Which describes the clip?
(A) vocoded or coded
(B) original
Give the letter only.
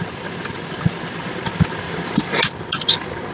B